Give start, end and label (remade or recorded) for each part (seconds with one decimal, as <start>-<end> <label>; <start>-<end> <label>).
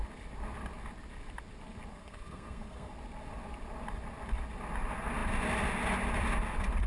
0.0-1.9 recorded; 1.9-2.9 remade; 2.9-6.9 recorded